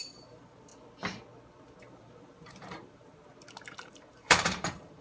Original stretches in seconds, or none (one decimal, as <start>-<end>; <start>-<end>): 0.7-1.8; 3.1-3.8